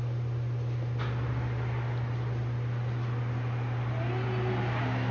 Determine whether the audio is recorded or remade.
recorded